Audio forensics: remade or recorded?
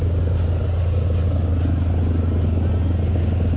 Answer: recorded